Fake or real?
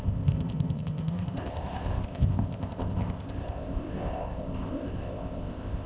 fake